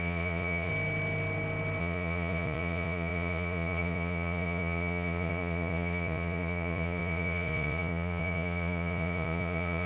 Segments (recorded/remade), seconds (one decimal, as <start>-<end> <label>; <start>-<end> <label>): 0.0-0.7 remade; 0.7-1.8 recorded; 1.8-9.9 remade

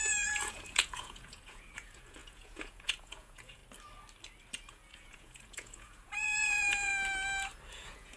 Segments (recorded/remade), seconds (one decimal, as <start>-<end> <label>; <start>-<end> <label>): 0.0-3.6 remade; 3.6-4.7 recorded; 4.7-6.9 remade; 6.9-7.7 recorded; 7.7-8.2 remade

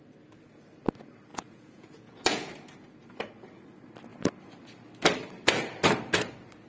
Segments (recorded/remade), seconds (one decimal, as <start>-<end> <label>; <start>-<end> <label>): 0.0-1.3 recorded; 1.3-2.5 remade; 2.5-6.7 recorded

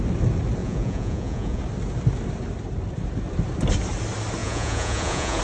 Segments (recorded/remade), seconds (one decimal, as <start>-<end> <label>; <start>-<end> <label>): 0.0-0.6 recorded; 0.6-1.6 remade; 1.6-4.4 recorded; 4.4-5.4 remade

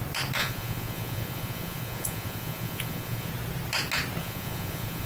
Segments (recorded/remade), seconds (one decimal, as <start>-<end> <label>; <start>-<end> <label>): 0.0-0.4 recorded; 0.4-3.3 remade; 3.3-4.2 recorded; 4.2-5.1 remade

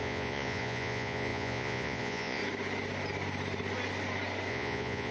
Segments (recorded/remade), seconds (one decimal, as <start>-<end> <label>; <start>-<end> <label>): 0.0-2.4 remade; 2.4-4.5 recorded; 4.5-5.1 remade